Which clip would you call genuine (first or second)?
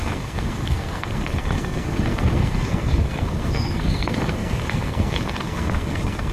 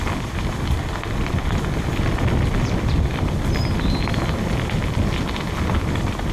second